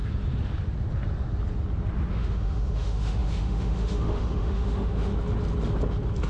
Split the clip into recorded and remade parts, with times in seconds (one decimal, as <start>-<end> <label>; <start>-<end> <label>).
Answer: 0.0-2.1 recorded; 2.1-5.1 remade; 5.1-6.3 recorded